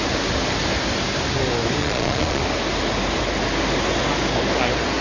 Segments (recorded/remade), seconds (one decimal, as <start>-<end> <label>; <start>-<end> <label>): 0.0-1.8 recorded; 1.8-2.4 remade; 2.4-5.0 recorded